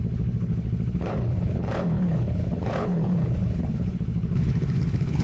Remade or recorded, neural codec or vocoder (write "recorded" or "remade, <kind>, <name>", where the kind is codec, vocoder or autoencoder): remade, codec, HILCodec